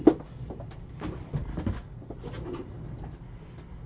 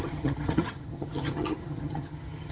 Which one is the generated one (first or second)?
second